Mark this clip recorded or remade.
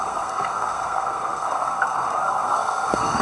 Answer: remade